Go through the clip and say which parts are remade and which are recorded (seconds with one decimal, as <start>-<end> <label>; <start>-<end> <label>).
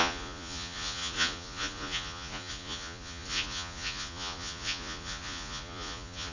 0.0-6.3 remade